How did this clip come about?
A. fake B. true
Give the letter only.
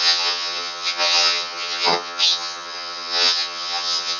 A